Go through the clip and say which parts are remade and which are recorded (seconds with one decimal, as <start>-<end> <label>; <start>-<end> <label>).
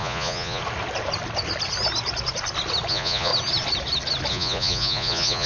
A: 0.0-0.6 remade; 0.6-2.9 recorded; 2.9-3.3 remade; 3.3-4.3 recorded; 4.3-5.5 remade